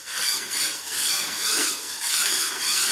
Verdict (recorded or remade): remade